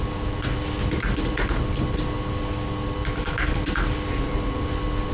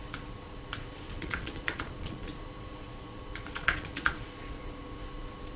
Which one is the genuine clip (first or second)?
first